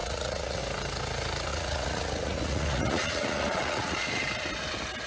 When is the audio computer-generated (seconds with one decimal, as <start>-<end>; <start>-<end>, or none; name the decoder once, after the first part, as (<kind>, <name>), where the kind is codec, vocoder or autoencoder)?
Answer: 0.0-0.6 (vocoder, Vocos); 1.5-4.2